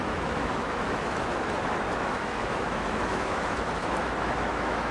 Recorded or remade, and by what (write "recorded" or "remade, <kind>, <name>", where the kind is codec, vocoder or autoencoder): remade, autoencoder, DAC-VAE